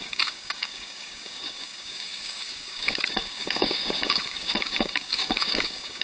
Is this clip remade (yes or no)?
yes